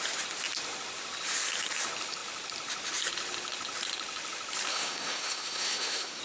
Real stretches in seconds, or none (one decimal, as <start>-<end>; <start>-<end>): 0.0-4.7